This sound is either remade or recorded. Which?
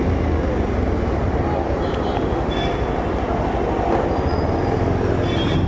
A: recorded